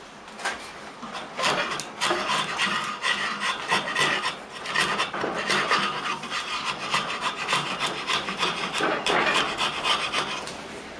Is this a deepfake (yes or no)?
no